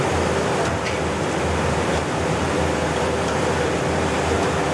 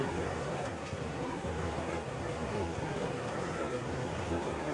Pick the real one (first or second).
first